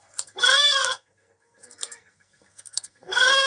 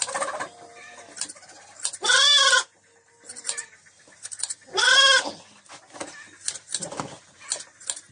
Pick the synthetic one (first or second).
first